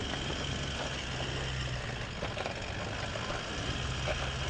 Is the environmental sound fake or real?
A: real